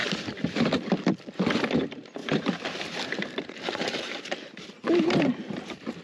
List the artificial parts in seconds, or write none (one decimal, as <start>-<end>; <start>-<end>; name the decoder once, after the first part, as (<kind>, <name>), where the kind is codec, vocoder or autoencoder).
0.0-0.6 (vocoder, BigVGAN v2); 2.2-6.0